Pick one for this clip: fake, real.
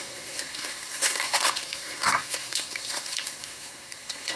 fake